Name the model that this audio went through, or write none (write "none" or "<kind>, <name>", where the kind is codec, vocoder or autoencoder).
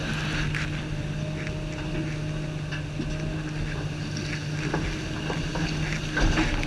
none